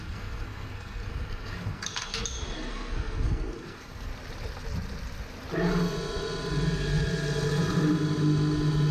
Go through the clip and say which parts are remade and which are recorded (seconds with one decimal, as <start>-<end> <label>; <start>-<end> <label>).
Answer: 0.0-2.2 remade; 2.2-2.7 recorded; 2.7-4.1 remade; 4.1-8.9 recorded